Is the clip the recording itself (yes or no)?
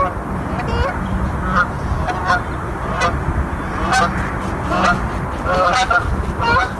yes